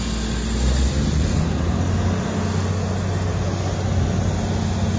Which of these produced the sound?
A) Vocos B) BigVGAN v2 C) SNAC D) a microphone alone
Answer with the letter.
D